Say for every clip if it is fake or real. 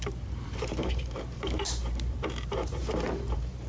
fake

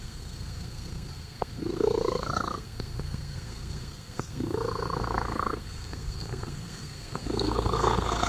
fake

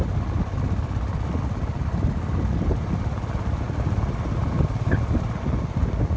real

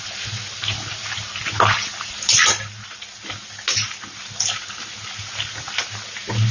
real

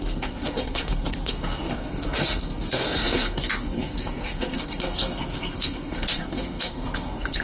fake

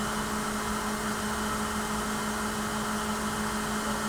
real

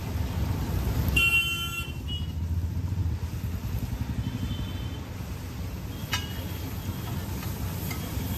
real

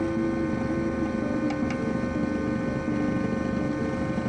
real